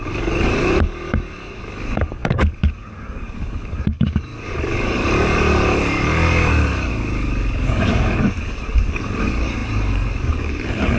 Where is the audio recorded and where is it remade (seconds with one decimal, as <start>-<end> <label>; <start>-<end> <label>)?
0.0-11.0 remade